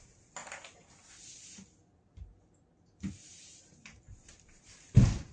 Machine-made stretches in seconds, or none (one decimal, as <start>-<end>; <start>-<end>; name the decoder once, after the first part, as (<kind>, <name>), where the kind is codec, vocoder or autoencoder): none